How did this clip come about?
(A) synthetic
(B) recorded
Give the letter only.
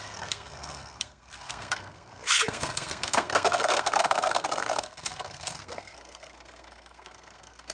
A